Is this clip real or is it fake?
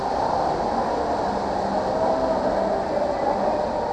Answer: real